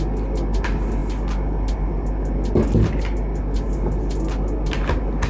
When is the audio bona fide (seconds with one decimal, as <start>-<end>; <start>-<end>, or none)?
0.0-5.3